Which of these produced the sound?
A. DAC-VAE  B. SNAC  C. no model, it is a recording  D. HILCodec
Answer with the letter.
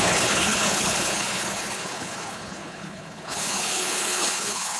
D